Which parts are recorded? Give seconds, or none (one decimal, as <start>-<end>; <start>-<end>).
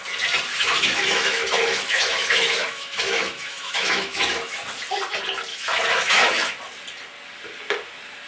0.0-0.5; 4.7-5.5; 6.5-8.3